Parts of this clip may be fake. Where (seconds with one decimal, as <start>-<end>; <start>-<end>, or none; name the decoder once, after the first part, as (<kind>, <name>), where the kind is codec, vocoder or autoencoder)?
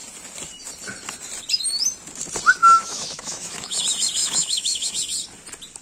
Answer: 2.6-3.8 (autoencoder, DAC-VAE); 4.2-4.9